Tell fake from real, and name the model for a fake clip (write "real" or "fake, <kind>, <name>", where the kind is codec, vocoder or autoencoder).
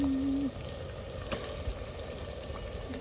real